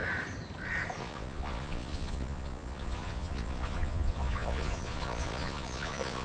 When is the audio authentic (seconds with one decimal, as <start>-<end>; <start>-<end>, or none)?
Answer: 0.0-1.0